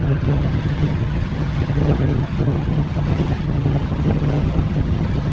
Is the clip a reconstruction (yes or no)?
yes